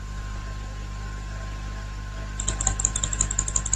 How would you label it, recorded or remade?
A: recorded